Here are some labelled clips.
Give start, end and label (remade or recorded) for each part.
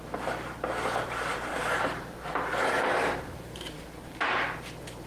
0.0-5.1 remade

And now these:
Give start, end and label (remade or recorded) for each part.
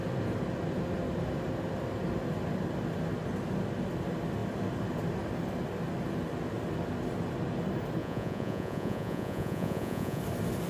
0.0-8.0 recorded; 8.0-10.2 remade; 10.2-10.7 recorded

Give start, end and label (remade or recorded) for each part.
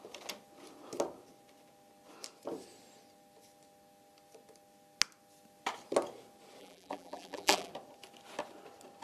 0.0-6.6 recorded; 6.6-7.7 remade; 7.7-9.0 recorded